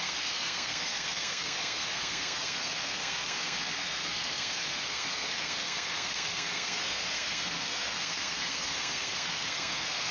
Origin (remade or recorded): remade